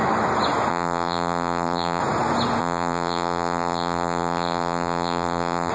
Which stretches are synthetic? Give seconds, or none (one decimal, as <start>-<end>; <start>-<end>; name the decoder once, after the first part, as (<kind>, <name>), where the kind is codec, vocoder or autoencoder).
0.7-2.0 (vocoder, BigVGAN v2); 2.6-5.7